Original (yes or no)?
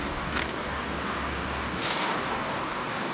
no